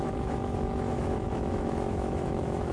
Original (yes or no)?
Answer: no